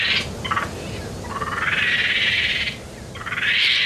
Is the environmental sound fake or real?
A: real